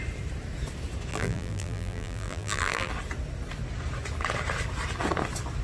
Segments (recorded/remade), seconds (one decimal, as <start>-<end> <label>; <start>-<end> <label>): 0.0-1.1 recorded; 1.1-2.9 remade; 2.9-5.6 recorded